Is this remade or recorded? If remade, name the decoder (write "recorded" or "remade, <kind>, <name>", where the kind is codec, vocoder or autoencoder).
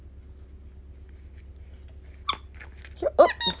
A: recorded